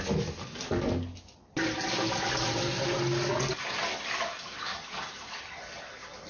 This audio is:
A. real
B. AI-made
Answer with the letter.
A